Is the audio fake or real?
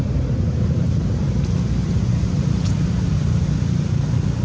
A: real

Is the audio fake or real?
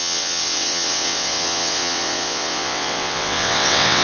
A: fake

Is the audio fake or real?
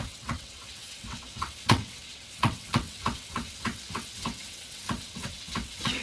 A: fake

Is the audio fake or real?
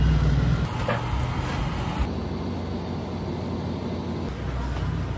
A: real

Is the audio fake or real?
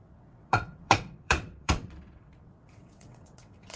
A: fake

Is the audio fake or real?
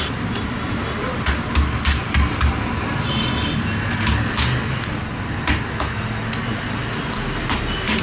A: real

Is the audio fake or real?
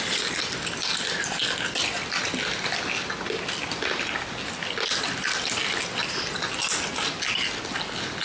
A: real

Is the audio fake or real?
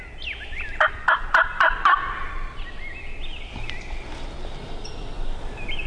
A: real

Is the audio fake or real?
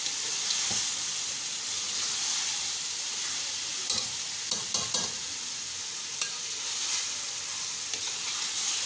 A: real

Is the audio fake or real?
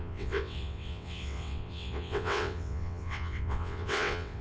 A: fake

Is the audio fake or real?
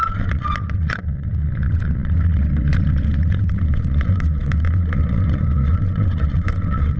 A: fake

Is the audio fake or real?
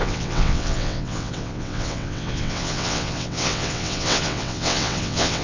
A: fake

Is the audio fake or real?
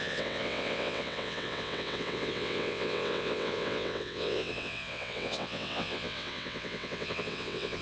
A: fake